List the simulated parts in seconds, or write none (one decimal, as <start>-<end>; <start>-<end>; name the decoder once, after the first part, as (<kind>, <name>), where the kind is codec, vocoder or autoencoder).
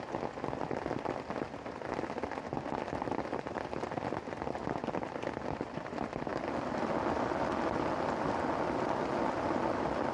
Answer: none